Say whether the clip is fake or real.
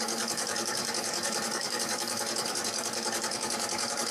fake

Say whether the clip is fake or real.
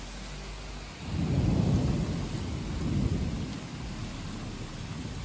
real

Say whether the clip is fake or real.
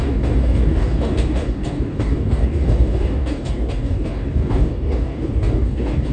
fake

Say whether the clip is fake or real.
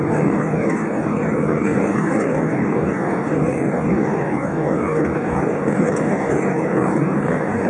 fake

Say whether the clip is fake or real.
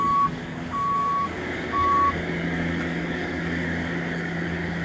fake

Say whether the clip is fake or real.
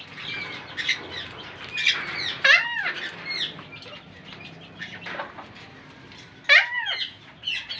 real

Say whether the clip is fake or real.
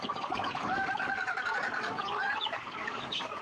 fake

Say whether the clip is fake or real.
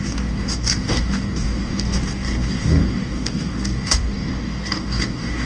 fake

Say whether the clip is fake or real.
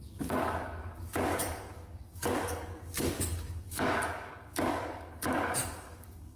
fake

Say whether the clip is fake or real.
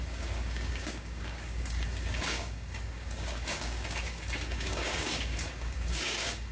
fake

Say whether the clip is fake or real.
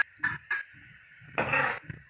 real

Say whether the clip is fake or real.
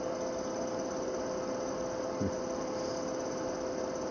real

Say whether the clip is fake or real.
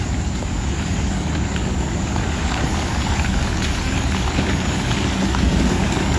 fake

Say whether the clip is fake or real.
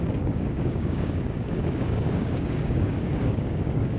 fake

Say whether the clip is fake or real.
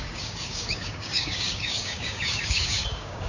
fake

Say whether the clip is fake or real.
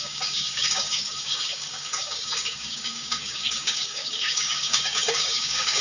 fake